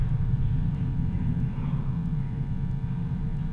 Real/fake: real